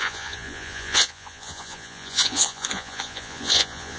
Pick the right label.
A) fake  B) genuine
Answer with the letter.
A